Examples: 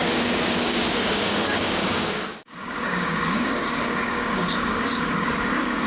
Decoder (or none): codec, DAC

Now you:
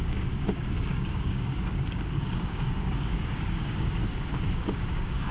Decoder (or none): codec, DAC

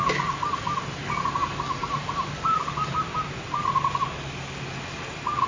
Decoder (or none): none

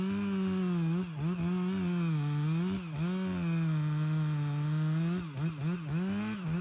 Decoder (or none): none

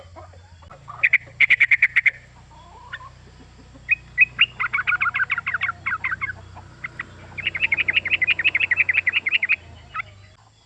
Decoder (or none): none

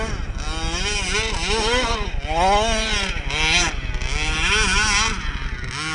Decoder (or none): none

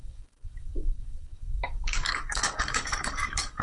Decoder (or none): codec, DAC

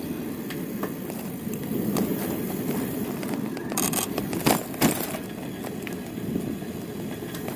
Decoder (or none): none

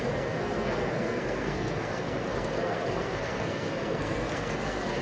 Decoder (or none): codec, SNAC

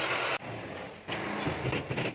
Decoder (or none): none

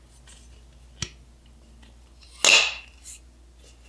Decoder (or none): none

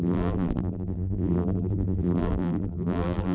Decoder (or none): vocoder, BigVGAN v2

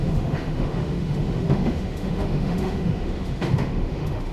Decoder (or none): autoencoder, DAC-VAE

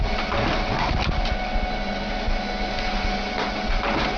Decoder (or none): none